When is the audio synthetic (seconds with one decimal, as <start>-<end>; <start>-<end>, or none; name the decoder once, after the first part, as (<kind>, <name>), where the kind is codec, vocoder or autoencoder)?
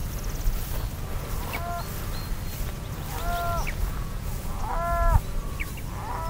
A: 3.8-4.6 (vocoder, Vocos)